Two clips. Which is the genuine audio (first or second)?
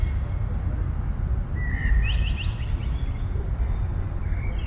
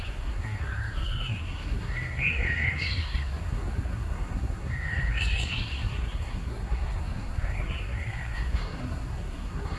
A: first